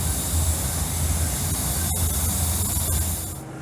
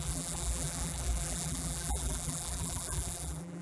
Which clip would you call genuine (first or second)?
first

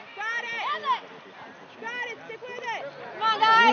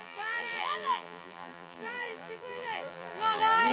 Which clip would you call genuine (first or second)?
first